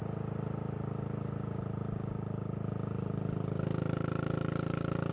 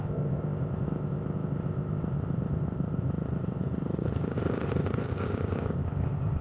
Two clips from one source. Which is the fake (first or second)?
second